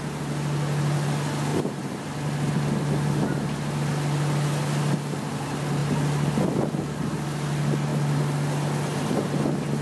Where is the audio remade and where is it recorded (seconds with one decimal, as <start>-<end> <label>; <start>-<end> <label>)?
0.0-1.5 recorded; 1.5-2.1 remade; 2.1-9.8 recorded